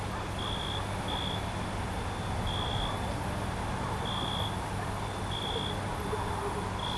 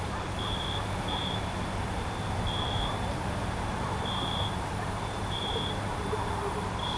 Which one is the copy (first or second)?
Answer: second